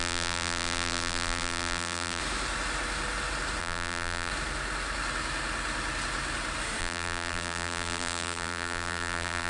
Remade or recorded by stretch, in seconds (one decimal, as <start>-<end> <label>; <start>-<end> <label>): 0.0-2.2 remade; 2.2-3.6 recorded; 3.6-4.3 remade; 4.3-6.8 recorded; 6.8-9.5 remade